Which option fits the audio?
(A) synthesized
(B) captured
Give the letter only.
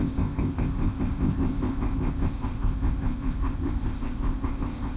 A